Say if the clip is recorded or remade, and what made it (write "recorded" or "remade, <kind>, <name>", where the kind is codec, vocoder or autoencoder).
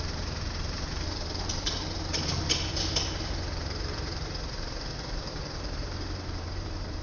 remade, vocoder, BigVGAN v2